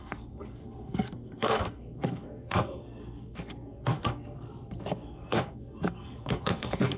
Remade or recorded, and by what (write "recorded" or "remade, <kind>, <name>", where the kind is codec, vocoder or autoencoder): remade, codec, SNAC